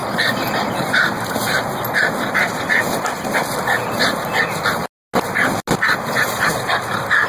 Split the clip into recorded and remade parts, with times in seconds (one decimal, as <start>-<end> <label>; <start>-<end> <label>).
0.0-7.3 recorded